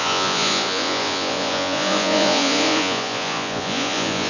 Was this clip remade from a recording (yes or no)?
yes